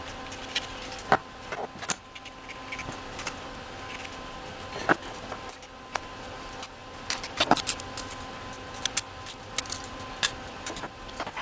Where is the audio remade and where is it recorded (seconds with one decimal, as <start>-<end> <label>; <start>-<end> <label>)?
0.0-11.4 recorded